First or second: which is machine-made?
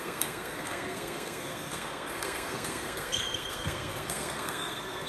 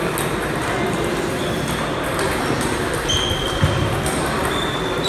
first